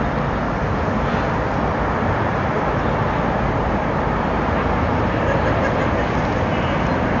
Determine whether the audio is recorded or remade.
recorded